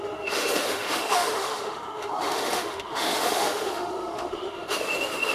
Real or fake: fake